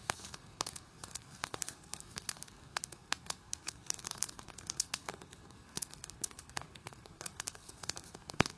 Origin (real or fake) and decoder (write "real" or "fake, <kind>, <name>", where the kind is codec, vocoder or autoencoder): fake, codec, SNAC